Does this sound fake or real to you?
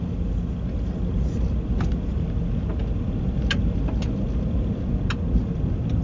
real